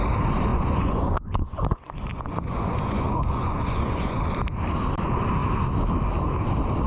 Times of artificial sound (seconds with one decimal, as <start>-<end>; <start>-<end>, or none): 0.5-4.2